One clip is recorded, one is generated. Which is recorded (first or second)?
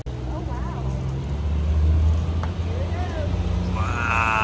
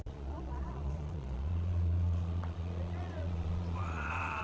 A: first